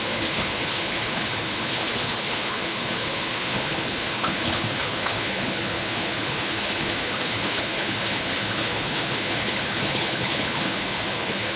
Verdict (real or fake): fake